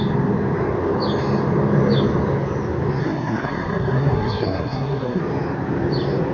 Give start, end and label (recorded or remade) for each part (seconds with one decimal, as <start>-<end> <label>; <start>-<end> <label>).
0.0-3.0 recorded; 3.0-5.2 remade; 5.2-6.3 recorded